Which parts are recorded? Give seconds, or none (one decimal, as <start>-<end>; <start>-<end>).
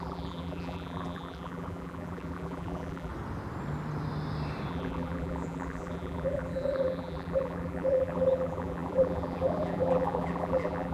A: 3.1-4.7